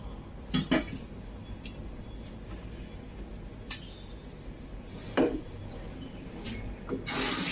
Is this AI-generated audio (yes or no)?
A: no